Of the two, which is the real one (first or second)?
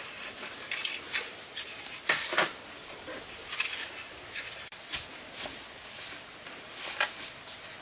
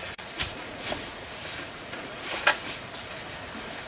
first